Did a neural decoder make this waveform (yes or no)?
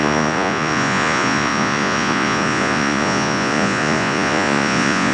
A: yes